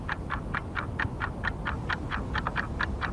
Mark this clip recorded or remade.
recorded